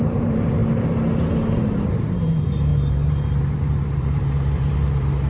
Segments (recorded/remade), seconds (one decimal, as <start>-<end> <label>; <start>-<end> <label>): 0.0-0.6 remade; 0.6-1.5 recorded; 1.5-5.3 remade